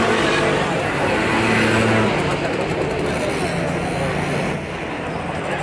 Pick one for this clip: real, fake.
real